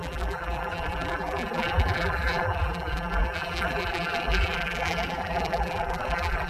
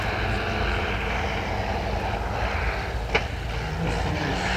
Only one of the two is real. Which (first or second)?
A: second